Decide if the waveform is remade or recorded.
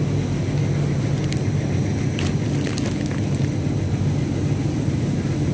recorded